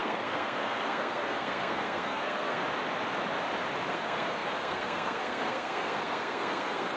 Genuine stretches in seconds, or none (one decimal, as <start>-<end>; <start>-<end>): 2.6-3.9